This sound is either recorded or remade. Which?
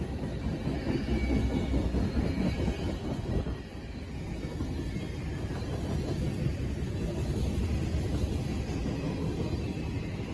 recorded